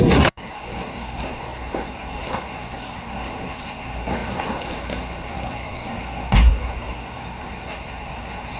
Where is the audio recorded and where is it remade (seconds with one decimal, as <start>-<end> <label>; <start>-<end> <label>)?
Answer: 0.0-8.6 remade